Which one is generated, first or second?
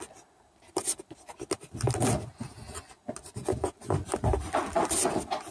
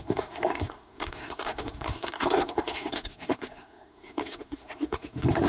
second